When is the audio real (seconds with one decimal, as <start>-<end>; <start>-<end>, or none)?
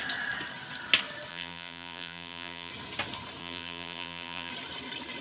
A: 0.0-1.3; 2.7-3.4; 4.5-5.2